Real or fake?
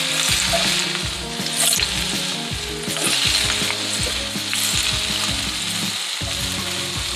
real